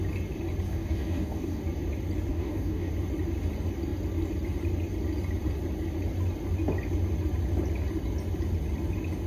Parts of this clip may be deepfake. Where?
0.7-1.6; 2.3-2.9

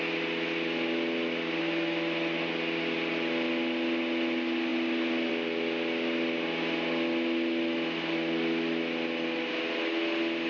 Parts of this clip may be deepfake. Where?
none

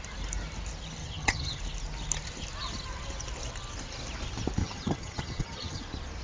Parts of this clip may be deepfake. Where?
1.0-1.6; 4.6-5.8

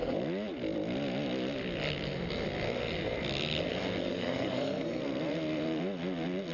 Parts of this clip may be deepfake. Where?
4.1-5.0